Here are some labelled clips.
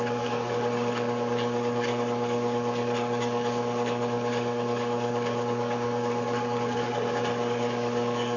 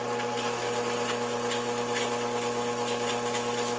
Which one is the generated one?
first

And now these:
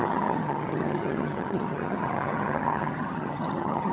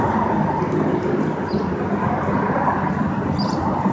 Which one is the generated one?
first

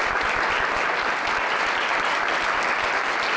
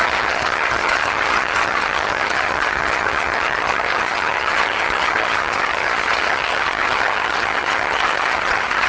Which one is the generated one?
second